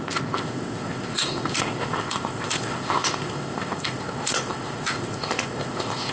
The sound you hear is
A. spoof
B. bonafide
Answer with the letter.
A